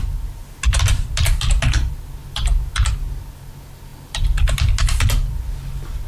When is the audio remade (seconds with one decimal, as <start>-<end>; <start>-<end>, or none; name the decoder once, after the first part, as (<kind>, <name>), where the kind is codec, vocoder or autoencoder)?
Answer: none